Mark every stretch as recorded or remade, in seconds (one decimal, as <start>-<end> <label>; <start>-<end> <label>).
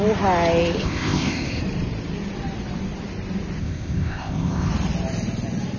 0.0-0.8 recorded; 0.8-1.6 remade; 1.6-3.6 recorded; 3.6-4.7 remade; 4.7-5.8 recorded